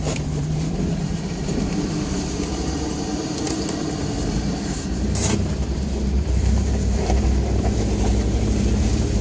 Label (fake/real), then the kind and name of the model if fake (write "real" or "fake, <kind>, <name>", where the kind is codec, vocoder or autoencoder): fake, vocoder, BigVGAN v2